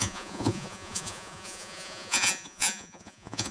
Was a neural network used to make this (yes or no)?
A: yes